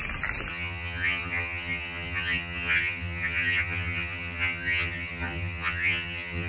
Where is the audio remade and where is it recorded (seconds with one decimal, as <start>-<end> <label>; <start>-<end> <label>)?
0.0-0.5 recorded; 0.5-6.5 remade